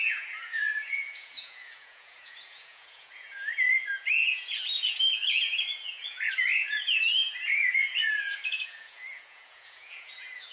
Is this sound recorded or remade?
remade